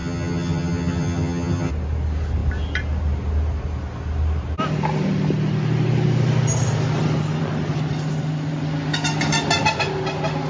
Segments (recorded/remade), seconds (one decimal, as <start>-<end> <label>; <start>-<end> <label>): 0.0-1.7 remade; 1.7-10.5 recorded